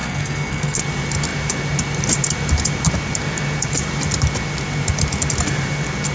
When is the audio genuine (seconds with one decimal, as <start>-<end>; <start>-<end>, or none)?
0.8-6.1